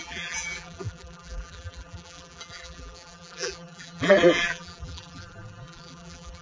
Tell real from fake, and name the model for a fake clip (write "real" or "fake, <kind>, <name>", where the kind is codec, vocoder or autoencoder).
fake, vocoder, BigVGAN v2